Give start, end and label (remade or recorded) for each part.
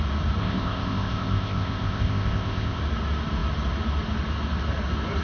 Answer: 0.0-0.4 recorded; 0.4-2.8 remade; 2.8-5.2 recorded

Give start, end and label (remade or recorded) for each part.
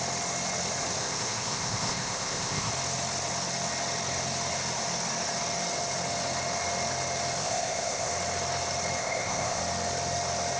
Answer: 0.0-1.0 recorded; 1.0-2.7 remade; 2.7-7.4 recorded; 7.4-8.1 remade; 8.1-9.0 recorded; 9.0-9.6 remade; 9.6-10.6 recorded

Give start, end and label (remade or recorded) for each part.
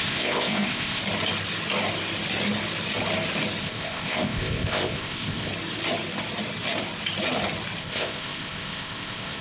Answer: 0.0-1.0 remade; 1.0-3.6 recorded; 3.6-5.5 remade; 5.5-7.8 recorded; 7.8-9.4 remade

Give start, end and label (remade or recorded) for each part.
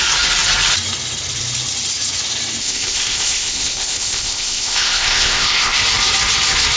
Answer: 0.0-2.6 recorded; 2.6-5.8 remade; 5.8-6.8 recorded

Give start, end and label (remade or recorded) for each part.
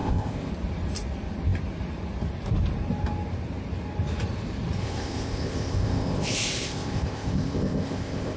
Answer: 0.0-0.5 remade; 0.5-4.8 recorded; 4.8-8.4 remade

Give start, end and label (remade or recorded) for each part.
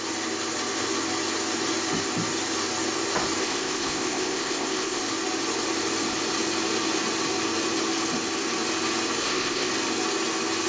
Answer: 0.0-3.4 recorded; 3.4-5.0 remade; 5.0-9.2 recorded; 9.2-9.7 remade; 9.7-10.7 recorded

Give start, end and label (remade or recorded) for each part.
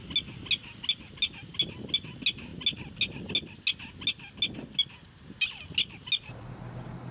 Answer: 0.0-7.1 recorded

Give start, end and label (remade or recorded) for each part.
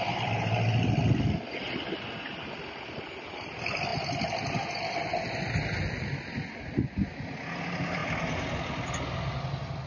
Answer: 0.0-9.9 recorded